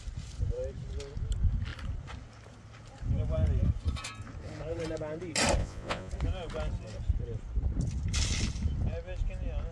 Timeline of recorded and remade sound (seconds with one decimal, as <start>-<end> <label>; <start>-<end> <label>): 0.0-5.6 recorded; 5.6-6.1 remade; 6.1-9.7 recorded